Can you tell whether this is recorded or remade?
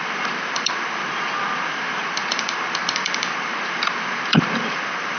remade